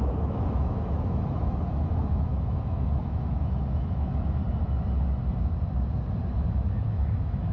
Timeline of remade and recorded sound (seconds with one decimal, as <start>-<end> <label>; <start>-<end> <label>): 0.0-4.4 remade; 4.4-6.3 recorded; 6.3-7.5 remade